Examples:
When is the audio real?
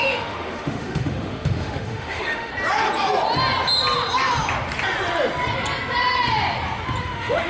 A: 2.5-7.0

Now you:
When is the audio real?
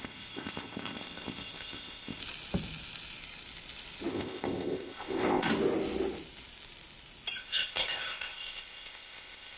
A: 2.2-4.1; 5.5-7.4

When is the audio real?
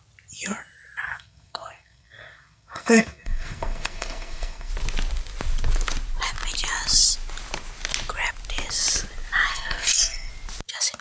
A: 0.0-1.1; 4.7-9.5; 10.3-11.0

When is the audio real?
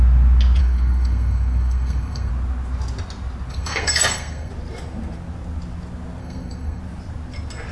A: 0.0-0.6; 2.3-3.5; 4.5-6.2; 6.8-7.7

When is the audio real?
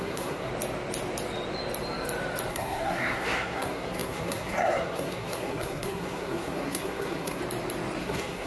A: 0.5-2.5; 7.4-8.0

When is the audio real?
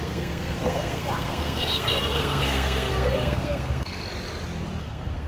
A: 4.0-4.8